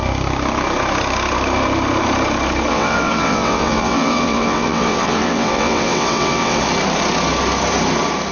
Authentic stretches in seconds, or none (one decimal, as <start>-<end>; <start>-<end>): 0.0-2.7; 6.6-8.3